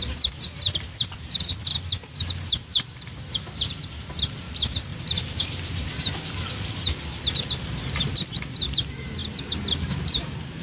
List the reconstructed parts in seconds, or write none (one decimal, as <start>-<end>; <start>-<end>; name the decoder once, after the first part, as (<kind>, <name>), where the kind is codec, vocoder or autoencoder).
0.0-4.9 (vocoder, BigVGAN v2); 7.6-9.2